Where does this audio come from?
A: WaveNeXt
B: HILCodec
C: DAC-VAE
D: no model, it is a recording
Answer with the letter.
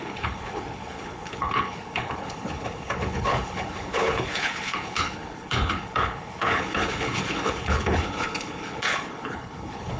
B